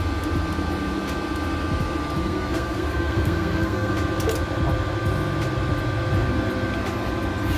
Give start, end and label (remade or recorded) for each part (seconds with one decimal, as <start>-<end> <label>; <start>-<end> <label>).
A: 0.0-2.2 recorded; 2.2-3.9 remade; 3.9-7.6 recorded